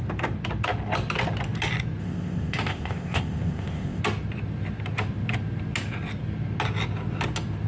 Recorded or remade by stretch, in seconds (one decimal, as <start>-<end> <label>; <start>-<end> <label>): 0.0-2.0 recorded; 2.0-4.0 remade; 4.0-7.7 recorded